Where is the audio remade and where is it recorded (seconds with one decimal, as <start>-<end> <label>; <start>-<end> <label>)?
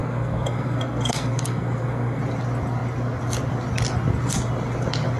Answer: 0.0-2.2 remade; 2.2-5.2 recorded